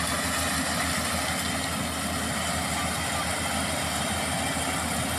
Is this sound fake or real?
real